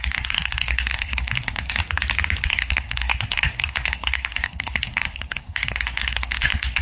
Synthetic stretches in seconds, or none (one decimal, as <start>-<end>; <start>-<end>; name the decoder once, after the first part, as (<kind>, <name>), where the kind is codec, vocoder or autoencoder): 0.0-1.8 (codec, SNAC); 2.4-6.8